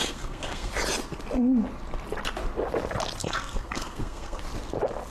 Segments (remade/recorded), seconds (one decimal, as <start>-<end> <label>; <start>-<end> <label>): 0.0-0.7 remade; 0.7-3.2 recorded; 3.2-4.4 remade; 4.4-5.1 recorded